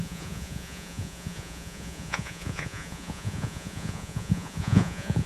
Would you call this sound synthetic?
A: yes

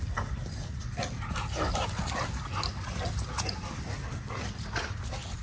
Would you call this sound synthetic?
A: no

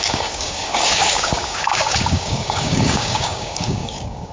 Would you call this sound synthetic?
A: yes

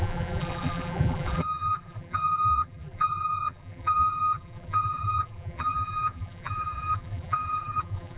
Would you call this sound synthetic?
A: yes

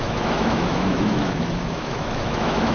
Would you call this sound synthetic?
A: yes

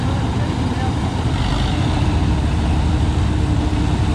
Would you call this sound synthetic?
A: no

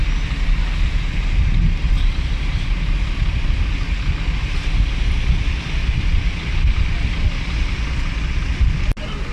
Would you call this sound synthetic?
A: no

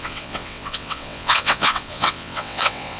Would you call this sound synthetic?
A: yes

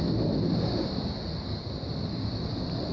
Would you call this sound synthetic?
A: no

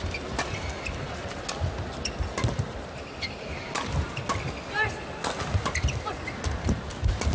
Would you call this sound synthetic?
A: no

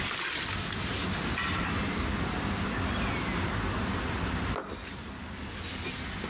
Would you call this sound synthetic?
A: no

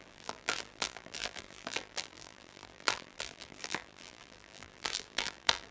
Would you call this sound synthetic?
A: yes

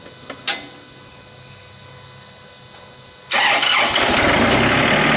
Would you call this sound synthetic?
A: no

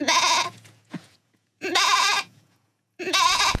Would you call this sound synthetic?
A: yes